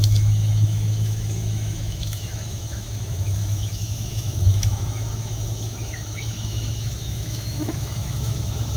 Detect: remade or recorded remade